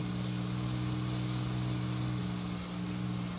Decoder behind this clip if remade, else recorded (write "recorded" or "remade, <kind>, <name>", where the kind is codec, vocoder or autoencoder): recorded